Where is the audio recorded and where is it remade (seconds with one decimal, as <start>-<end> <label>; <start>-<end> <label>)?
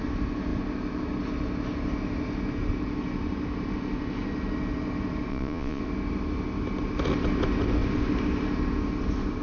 0.0-5.3 recorded; 5.3-5.8 remade; 5.8-9.4 recorded